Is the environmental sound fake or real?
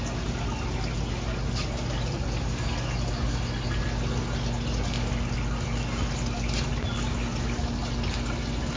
real